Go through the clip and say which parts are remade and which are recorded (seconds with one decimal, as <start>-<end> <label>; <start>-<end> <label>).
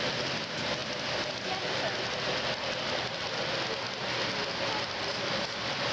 0.0-5.9 recorded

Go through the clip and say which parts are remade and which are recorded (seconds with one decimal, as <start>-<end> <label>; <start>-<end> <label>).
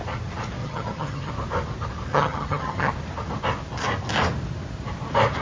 0.0-0.6 recorded; 0.6-1.3 remade; 1.3-2.1 recorded; 2.1-2.9 remade; 2.9-5.4 recorded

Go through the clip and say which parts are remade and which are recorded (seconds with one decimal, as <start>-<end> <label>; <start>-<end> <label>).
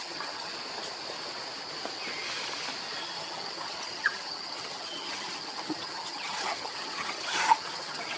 0.0-0.5 remade; 0.5-3.0 recorded; 3.0-8.2 remade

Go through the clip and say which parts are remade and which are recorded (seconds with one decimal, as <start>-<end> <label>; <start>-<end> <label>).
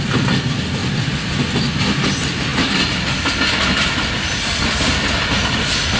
0.0-6.0 recorded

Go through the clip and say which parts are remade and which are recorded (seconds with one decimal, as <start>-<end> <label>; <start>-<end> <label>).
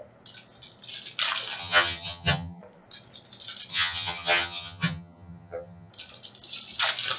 0.0-1.6 recorded; 1.6-2.6 remade; 2.6-3.7 recorded; 3.7-5.9 remade; 5.9-7.2 recorded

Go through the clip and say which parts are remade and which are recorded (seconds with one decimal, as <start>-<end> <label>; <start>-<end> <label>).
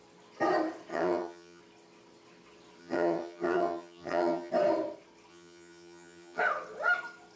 0.0-0.9 recorded; 0.9-1.6 remade; 1.6-2.8 recorded; 2.8-4.5 remade; 4.5-5.3 recorded; 5.3-6.4 remade; 6.4-7.4 recorded